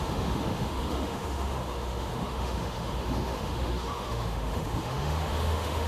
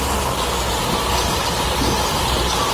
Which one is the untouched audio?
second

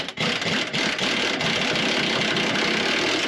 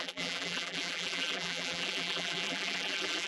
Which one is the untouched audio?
first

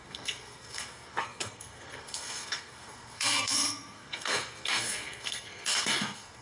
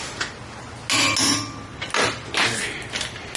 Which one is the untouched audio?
second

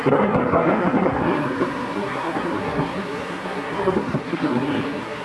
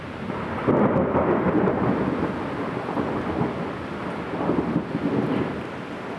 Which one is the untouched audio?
second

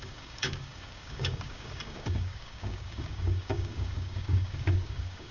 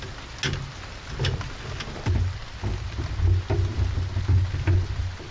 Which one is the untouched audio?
second